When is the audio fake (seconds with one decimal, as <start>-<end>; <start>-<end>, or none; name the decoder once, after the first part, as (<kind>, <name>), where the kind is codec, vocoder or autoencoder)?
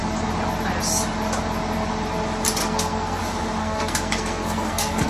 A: 2.6-3.2 (codec, SNAC); 3.6-5.1